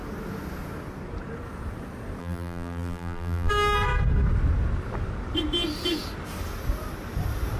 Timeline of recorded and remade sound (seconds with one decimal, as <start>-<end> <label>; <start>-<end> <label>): 0.0-2.2 recorded; 2.2-3.5 remade; 3.5-7.6 recorded